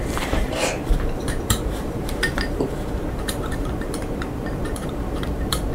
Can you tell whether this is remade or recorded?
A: remade